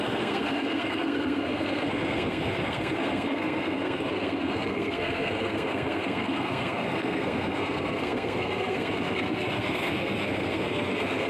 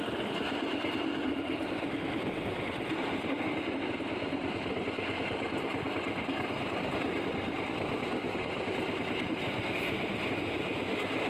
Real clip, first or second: second